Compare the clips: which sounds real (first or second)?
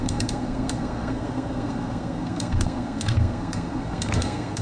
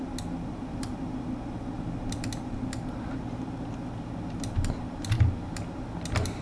second